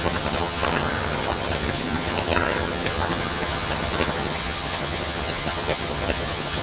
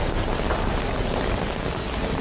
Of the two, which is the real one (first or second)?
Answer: second